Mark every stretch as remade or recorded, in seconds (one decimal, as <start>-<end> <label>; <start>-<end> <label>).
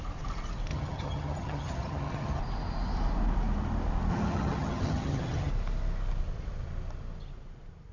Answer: 0.0-0.7 recorded; 0.7-2.4 remade; 2.4-4.1 recorded; 4.1-5.5 remade; 5.5-7.9 recorded